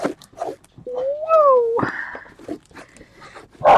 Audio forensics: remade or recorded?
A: recorded